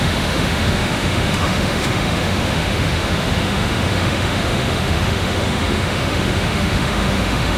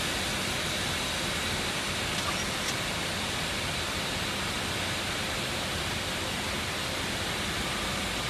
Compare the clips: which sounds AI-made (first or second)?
first